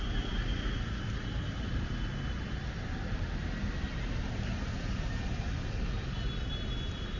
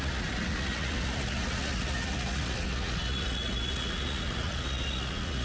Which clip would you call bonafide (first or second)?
first